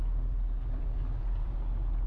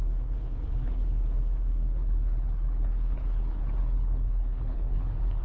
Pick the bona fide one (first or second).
first